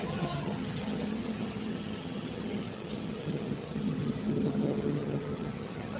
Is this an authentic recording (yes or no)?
no